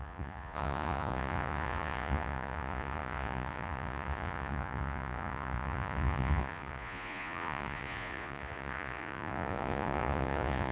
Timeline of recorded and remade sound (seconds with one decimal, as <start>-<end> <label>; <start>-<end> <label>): 0.0-10.7 remade

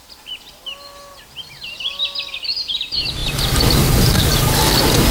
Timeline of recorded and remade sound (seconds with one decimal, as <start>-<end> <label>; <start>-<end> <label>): 0.0-5.1 recorded